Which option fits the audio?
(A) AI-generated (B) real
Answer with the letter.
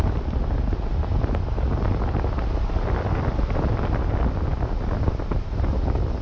B